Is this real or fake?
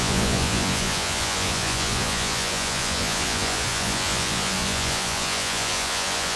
fake